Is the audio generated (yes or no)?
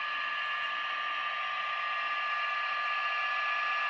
no